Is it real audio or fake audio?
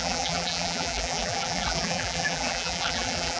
fake